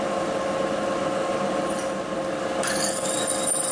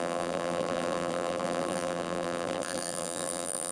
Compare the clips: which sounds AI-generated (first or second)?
second